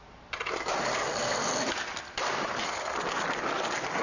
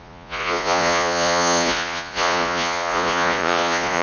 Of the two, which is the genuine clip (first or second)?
first